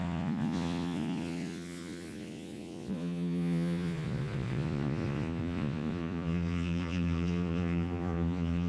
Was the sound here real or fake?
fake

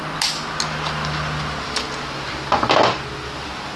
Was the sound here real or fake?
real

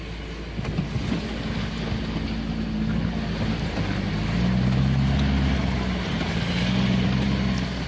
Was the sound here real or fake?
real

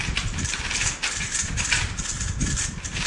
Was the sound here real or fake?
real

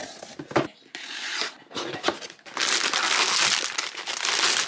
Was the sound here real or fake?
real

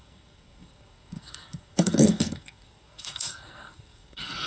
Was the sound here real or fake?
fake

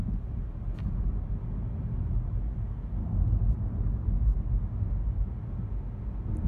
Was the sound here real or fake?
real